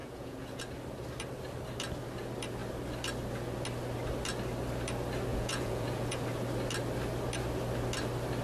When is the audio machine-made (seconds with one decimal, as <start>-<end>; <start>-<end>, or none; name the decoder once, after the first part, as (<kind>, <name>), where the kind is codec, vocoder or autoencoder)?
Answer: 0.0-0.6 (vocoder, Vocos); 5.3-6.2